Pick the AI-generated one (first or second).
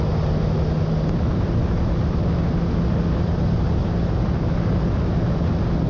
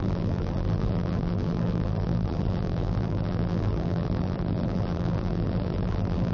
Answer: second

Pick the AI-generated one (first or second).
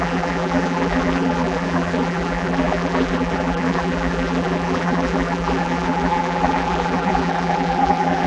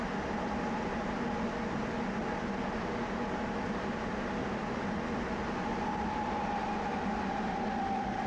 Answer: first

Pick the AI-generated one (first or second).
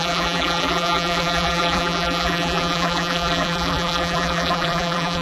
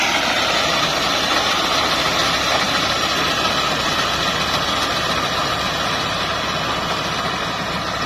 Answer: first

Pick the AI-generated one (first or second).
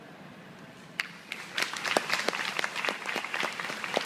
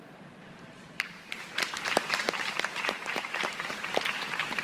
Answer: second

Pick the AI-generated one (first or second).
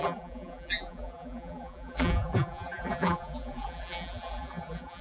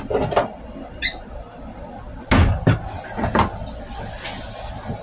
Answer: first